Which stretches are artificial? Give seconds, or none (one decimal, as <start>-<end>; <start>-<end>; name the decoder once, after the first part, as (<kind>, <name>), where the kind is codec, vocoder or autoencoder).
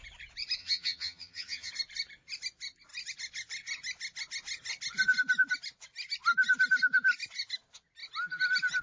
0.6-1.7 (vocoder, HiFi-GAN)